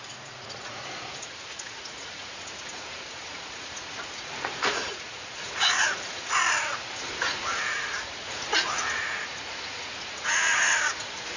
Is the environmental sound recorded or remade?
remade